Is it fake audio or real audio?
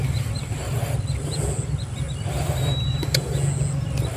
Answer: real